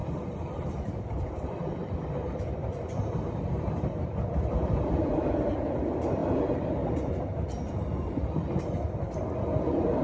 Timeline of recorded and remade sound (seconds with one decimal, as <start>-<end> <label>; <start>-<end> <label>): 0.0-3.6 remade; 3.6-10.0 recorded